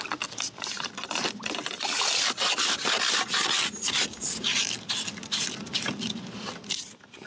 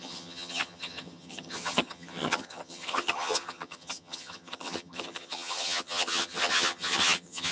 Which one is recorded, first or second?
first